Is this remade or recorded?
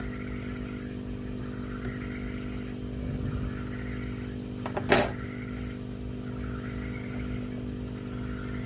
recorded